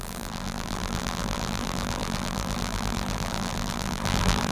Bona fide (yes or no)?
no